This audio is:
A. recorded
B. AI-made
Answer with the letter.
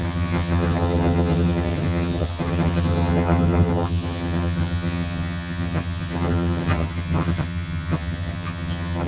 B